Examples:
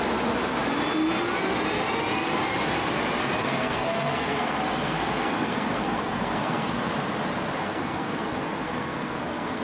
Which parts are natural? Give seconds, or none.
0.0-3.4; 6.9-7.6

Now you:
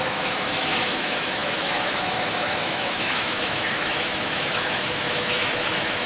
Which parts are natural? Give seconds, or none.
none

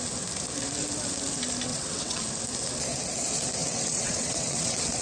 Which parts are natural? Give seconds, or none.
0.0-1.7; 2.2-3.6

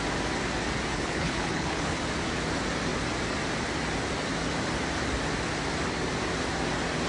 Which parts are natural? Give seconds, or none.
0.0-0.9; 2.0-7.1